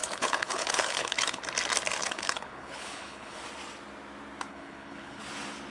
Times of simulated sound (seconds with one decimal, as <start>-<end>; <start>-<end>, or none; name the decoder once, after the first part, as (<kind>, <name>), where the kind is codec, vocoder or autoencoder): 0.0-1.4 (codec, HILCodec); 2.0-3.4; 4.5-5.2